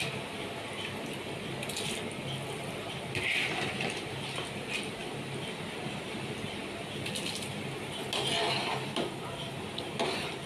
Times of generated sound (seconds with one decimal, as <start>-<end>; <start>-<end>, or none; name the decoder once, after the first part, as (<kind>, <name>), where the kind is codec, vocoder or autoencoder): none